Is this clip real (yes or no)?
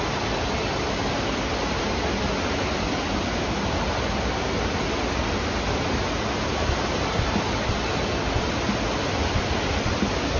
yes